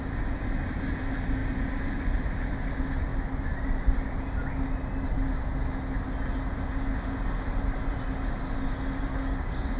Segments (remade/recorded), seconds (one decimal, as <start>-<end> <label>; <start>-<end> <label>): 0.0-9.1 recorded; 9.1-9.8 remade